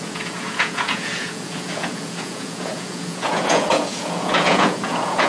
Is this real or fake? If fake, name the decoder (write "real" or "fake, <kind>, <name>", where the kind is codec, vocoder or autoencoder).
fake, vocoder, Vocos